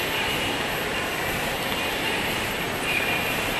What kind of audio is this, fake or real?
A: real